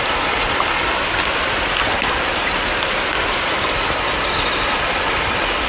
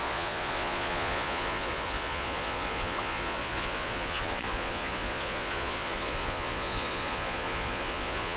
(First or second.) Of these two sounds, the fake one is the second